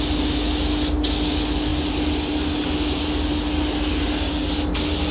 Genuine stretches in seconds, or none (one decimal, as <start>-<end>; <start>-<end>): 0.0-5.1